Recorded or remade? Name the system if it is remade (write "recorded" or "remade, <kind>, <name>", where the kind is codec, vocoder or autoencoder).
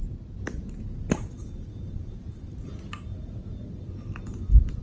recorded